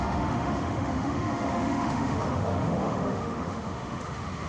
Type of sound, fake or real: fake